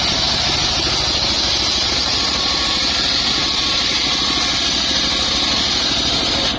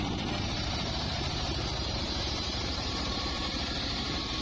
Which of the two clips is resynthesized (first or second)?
second